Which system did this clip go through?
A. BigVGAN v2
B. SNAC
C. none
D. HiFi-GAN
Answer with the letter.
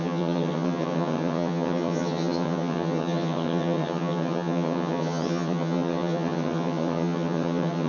D